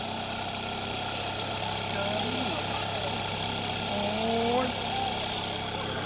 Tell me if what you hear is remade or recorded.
recorded